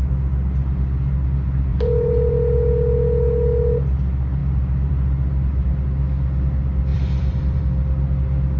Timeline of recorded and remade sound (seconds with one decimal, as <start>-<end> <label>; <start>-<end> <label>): 0.0-1.7 recorded; 1.7-2.3 remade; 2.3-6.9 recorded; 6.9-7.6 remade; 7.6-8.6 recorded